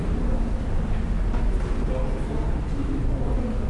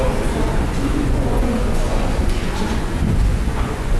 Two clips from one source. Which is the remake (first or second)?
second